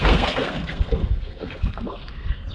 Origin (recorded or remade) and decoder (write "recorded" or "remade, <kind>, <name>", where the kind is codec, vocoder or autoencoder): remade, codec, SNAC